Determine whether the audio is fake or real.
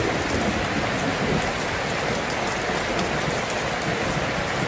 real